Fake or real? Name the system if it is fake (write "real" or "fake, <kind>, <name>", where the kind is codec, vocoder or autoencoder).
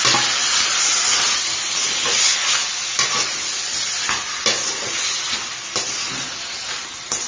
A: real